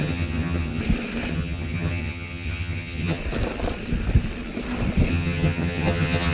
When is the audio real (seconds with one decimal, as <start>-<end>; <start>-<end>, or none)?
0.8-1.3; 3.2-5.1